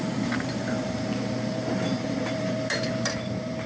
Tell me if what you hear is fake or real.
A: fake